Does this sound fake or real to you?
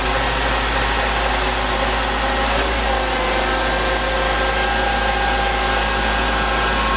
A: real